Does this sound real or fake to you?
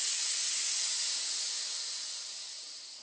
real